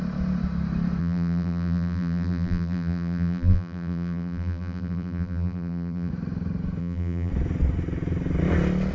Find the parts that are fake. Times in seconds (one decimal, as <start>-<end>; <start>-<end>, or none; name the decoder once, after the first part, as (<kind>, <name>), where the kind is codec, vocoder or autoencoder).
1.0-6.1 (vocoder, BigVGAN v2); 6.8-7.3